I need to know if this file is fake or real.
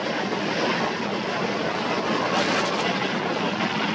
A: real